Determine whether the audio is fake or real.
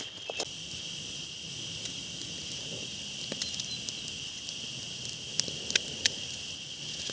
real